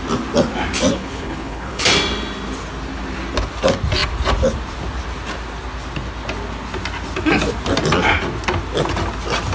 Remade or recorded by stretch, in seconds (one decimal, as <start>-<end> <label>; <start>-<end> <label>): 0.0-0.9 recorded; 0.9-1.8 remade; 1.8-9.5 recorded